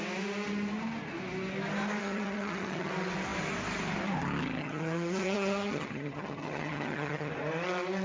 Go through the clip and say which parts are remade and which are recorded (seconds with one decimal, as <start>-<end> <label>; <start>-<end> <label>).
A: 0.0-2.0 recorded; 2.0-2.9 remade; 2.9-4.6 recorded; 4.6-7.3 remade; 7.3-8.0 recorded